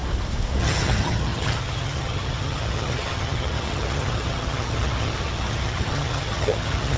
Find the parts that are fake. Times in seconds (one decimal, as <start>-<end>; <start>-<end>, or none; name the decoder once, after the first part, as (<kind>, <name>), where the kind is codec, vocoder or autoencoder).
0.6-7.0 (vocoder, HiFi-GAN)

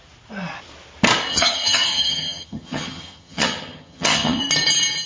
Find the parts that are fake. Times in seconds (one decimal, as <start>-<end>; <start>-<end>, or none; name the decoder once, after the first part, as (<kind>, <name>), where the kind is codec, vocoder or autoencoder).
1.3-4.4 (vocoder, HiFi-GAN)

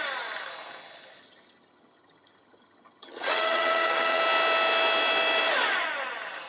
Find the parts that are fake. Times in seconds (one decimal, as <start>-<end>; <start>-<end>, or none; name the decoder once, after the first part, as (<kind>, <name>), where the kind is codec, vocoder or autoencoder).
1.2-4.2 (vocoder, HiFi-GAN)

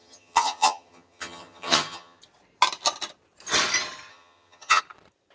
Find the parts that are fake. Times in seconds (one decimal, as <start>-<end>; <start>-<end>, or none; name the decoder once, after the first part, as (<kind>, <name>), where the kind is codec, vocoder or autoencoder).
0.0-2.2 (vocoder, HiFi-GAN); 4.1-4.8